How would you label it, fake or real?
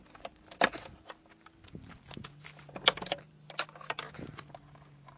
real